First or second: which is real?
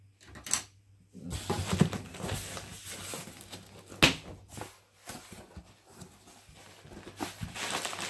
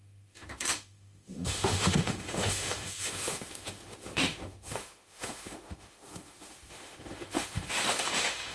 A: first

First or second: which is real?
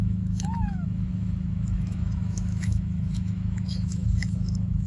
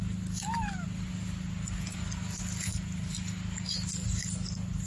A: second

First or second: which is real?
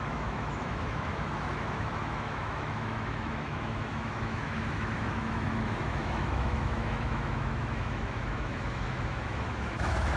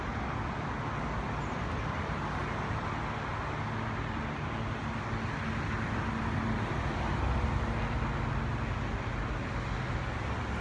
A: second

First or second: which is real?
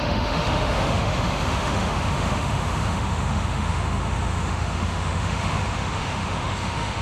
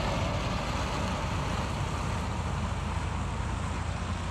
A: second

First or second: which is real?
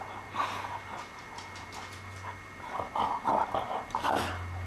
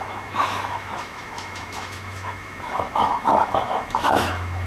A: first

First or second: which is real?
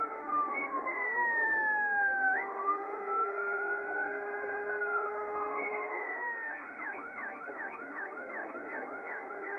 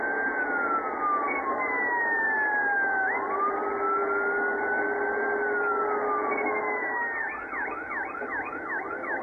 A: second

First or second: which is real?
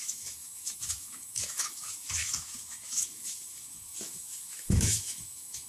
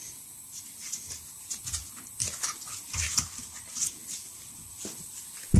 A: second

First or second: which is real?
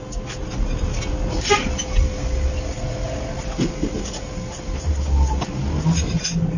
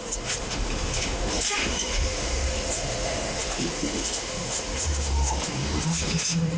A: first